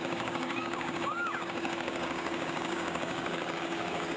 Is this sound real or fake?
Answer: fake